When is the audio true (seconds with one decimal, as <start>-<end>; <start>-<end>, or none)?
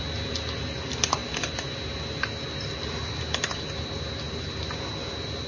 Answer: 0.0-5.5